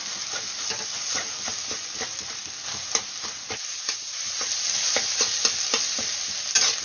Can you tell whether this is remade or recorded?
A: recorded